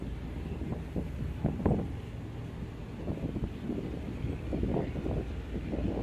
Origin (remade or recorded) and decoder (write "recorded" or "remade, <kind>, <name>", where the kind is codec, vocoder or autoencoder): recorded